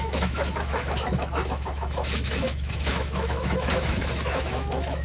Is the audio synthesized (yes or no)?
yes